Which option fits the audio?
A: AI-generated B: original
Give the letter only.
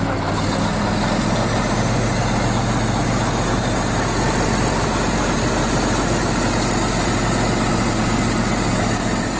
B